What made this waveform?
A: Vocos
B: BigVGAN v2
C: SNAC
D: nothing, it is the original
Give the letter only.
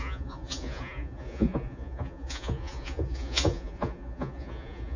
A